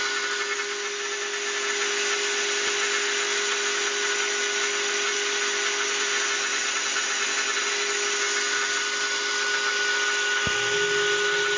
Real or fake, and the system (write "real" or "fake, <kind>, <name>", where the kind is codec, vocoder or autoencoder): real